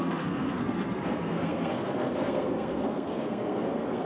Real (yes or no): no